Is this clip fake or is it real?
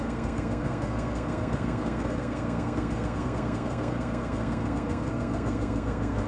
fake